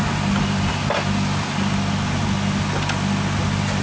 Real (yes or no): yes